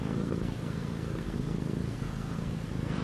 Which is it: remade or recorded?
remade